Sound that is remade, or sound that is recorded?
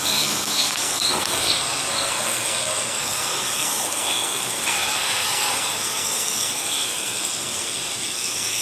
remade